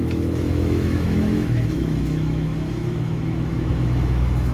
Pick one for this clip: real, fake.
fake